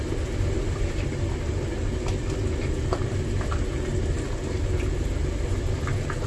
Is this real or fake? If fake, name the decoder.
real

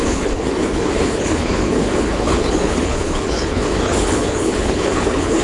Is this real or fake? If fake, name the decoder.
fake, codec, HILCodec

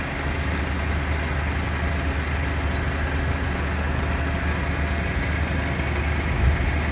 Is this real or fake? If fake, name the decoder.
real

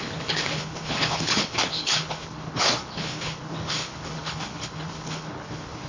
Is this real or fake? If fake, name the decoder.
fake, codec, HILCodec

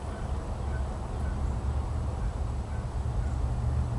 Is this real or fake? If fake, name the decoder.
real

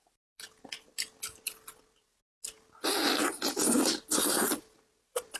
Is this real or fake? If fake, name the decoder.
real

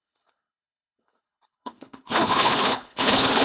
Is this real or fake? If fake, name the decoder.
fake, codec, HILCodec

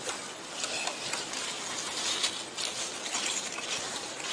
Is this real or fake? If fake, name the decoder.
real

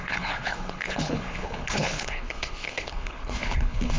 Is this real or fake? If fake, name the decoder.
fake, codec, HILCodec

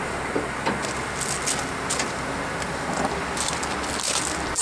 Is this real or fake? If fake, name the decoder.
real